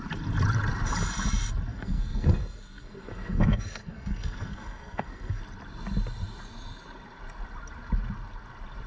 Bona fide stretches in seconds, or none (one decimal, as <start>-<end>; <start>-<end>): 0.0-1.7; 5.4-8.9